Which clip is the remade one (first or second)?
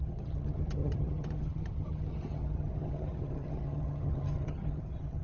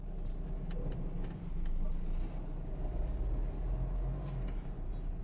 first